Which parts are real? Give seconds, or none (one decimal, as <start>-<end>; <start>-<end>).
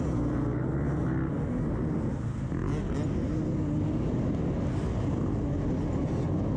0.0-6.6